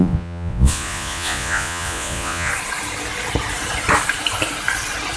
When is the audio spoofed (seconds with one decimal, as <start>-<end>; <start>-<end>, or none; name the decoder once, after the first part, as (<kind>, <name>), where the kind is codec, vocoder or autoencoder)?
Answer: 0.0-2.5 (vocoder, Vocos)